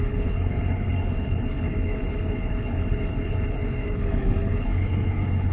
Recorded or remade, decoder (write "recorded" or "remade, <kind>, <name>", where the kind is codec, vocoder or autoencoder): remade, codec, HILCodec